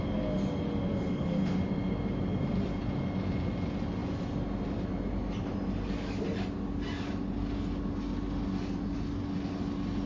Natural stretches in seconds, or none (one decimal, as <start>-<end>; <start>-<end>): 0.0-10.1